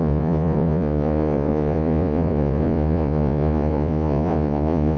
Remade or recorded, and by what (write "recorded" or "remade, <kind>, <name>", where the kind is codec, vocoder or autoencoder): remade, vocoder, Vocos